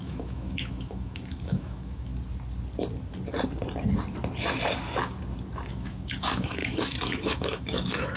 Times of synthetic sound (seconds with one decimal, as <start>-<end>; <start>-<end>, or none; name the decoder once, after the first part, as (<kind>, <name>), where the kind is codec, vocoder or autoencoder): 0.0-2.1 (autoencoder, DAC-VAE); 5.7-8.2